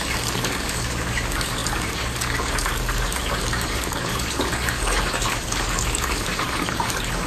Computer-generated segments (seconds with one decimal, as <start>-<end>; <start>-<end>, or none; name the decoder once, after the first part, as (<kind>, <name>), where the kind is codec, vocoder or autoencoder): 0.0-7.3 (codec, DAC)